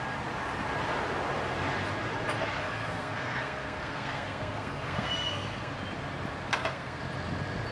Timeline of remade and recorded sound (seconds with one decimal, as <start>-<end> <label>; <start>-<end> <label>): 0.0-2.6 recorded; 2.6-5.7 remade; 5.7-6.5 recorded; 6.5-7.0 remade; 7.0-7.7 recorded